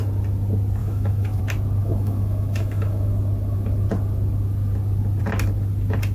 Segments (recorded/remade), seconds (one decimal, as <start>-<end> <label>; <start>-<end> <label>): 0.0-0.8 recorded; 0.8-1.4 remade; 1.4-1.8 recorded; 1.8-3.1 remade; 3.1-6.1 recorded